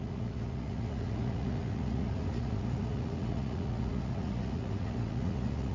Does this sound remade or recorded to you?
remade